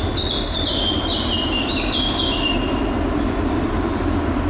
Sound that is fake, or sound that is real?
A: fake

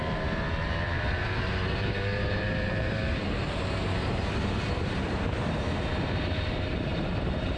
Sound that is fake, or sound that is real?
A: fake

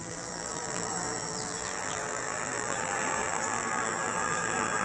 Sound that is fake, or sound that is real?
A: fake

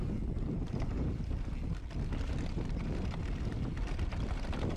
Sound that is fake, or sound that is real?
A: real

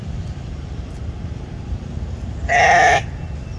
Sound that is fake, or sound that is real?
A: fake